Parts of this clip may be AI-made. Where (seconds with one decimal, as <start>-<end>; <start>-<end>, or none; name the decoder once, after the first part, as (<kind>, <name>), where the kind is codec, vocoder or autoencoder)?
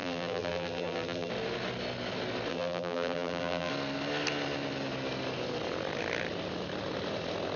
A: 0.0-1.3 (vocoder, BigVGAN v2); 2.5-3.7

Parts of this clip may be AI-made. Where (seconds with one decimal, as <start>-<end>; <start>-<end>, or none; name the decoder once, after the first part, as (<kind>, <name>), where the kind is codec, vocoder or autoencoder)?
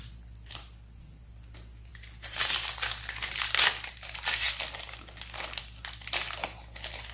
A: none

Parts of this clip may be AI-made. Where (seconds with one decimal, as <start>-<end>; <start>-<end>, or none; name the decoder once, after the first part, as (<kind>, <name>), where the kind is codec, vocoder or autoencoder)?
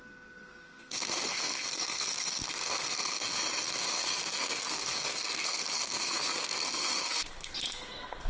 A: 0.0-3.3 (codec, SNAC); 3.8-8.3